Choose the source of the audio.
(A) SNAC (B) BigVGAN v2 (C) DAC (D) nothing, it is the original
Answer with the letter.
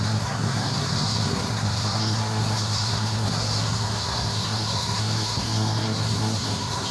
A